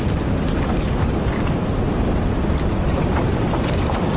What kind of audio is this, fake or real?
real